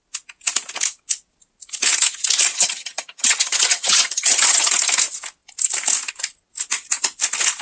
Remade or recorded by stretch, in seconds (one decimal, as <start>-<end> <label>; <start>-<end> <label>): 0.0-2.5 recorded; 2.5-4.7 remade; 4.7-7.6 recorded